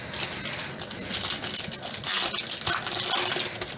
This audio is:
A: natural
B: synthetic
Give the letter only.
A